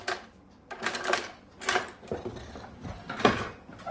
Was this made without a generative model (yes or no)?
yes